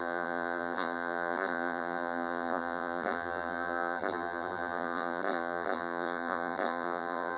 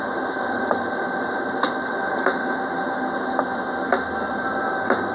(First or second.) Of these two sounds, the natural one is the second